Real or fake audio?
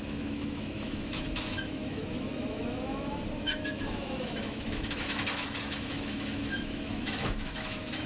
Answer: fake